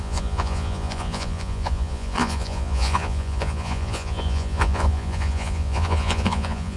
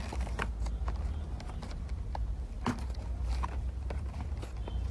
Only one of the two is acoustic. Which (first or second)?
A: second